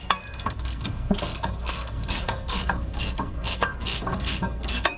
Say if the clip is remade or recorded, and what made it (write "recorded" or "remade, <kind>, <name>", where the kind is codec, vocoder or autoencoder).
remade, codec, SNAC